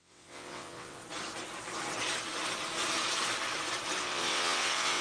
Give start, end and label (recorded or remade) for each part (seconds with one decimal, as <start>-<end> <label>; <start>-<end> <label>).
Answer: 0.0-1.0 remade; 1.0-4.0 recorded; 4.0-5.0 remade